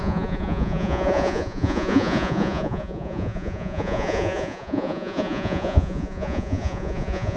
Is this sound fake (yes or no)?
yes